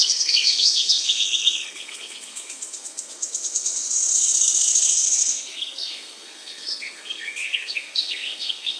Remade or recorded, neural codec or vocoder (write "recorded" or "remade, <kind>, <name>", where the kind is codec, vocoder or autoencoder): remade, codec, SNAC